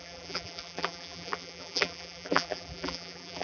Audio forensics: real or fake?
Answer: fake